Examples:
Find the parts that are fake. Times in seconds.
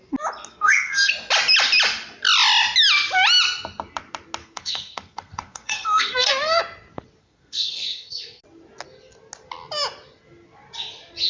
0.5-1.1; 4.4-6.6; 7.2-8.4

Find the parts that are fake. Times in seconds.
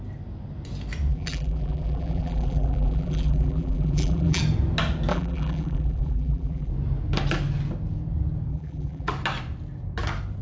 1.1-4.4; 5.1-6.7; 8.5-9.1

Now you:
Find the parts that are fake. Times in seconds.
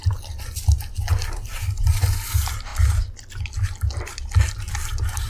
1.1-1.8; 2.7-3.2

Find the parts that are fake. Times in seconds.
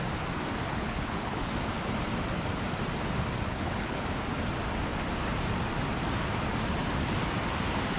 0.7-1.5; 3.5-4.0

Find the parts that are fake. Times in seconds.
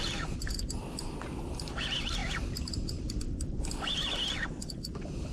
none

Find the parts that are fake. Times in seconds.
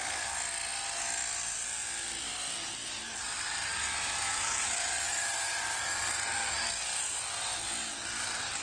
1.2-3.7; 5.1-6.0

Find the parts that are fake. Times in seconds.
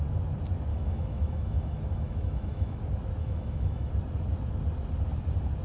0.7-2.8; 3.2-3.9